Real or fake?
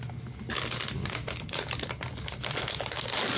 real